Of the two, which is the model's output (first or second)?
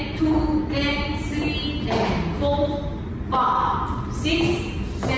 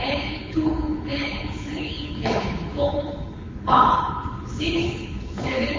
second